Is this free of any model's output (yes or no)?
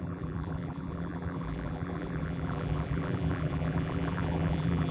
no